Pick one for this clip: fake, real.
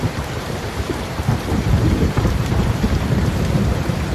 fake